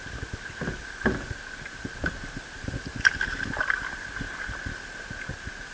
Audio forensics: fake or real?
real